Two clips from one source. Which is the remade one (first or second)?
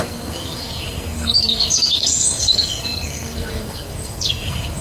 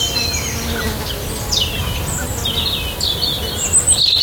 first